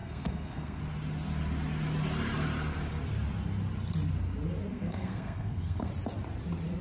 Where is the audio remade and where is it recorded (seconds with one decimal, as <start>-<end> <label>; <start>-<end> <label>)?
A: 0.0-0.8 remade; 0.8-4.7 recorded; 4.7-5.9 remade; 5.9-6.8 recorded